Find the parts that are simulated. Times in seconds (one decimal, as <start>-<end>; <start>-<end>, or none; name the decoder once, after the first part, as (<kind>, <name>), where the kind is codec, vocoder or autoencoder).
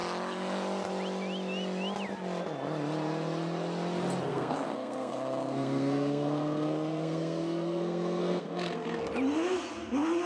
4.3-9.0 (codec, SNAC)